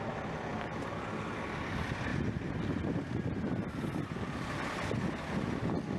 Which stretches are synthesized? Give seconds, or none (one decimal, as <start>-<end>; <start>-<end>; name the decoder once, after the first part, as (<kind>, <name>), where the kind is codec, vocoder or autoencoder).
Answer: none